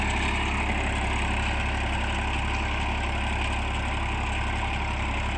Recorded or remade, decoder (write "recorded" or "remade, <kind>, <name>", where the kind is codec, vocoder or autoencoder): recorded